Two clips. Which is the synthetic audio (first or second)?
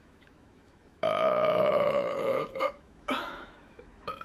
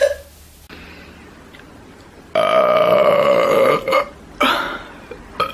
first